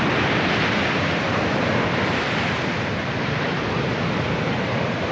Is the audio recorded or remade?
recorded